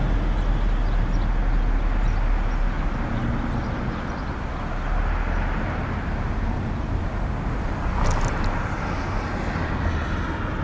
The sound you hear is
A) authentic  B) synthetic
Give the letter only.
A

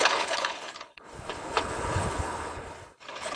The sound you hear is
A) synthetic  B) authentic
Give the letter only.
A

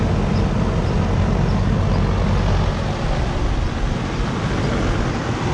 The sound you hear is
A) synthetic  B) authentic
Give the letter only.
B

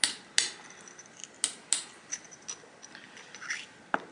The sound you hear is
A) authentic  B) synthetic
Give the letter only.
A